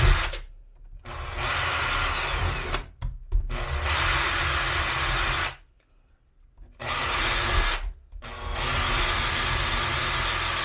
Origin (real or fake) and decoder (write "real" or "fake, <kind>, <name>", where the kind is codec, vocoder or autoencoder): real